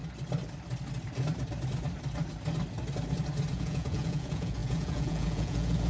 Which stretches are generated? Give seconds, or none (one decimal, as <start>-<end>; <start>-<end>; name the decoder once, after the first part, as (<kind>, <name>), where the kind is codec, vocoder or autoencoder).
3.5-5.9 (vocoder, Vocos)